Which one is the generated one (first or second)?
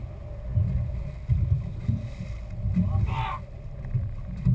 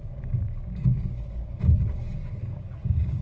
second